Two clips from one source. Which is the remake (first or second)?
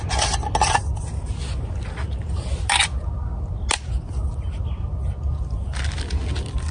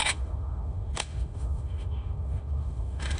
second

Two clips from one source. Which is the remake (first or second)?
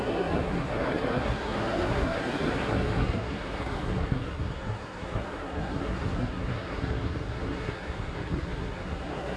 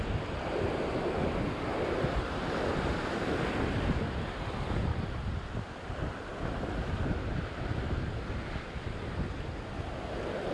first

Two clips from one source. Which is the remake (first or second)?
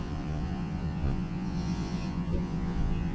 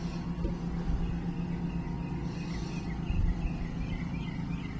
first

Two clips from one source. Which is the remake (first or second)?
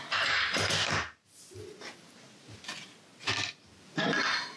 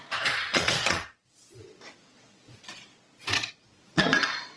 second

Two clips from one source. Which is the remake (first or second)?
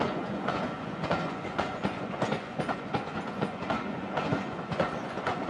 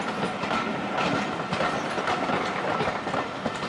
first